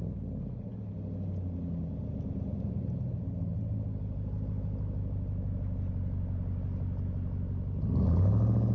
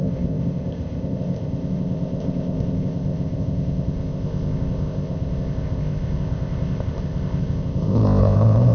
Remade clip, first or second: second